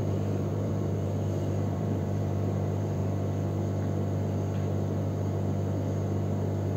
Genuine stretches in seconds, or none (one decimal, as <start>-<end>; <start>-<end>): 3.0-6.8